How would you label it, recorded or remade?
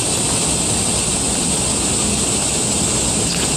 recorded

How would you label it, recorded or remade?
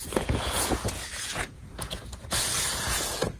remade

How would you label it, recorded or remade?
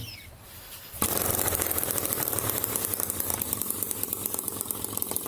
remade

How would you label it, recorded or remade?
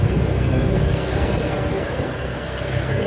remade